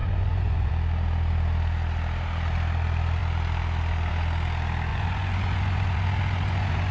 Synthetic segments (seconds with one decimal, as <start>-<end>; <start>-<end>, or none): 0.0-0.7; 4.9-6.9